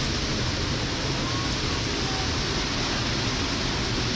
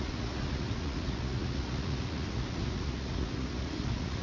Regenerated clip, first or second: second